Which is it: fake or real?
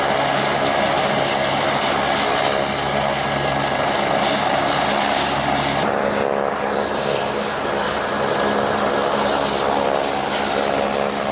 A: real